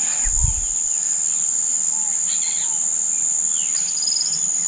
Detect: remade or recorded recorded